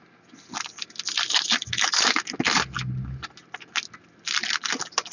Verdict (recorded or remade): recorded